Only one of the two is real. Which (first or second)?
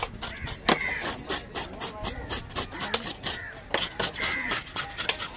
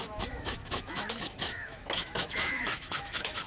first